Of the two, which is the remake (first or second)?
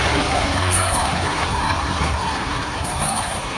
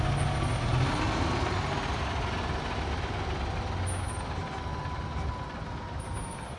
first